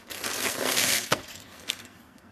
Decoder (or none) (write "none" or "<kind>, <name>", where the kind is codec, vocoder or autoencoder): codec, SNAC